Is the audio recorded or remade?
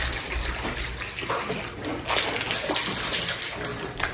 recorded